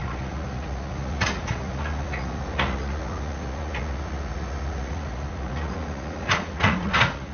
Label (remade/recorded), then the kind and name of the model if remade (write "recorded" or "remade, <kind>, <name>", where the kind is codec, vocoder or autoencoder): remade, vocoder, Vocos